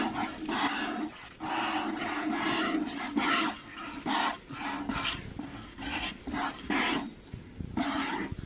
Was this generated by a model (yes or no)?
no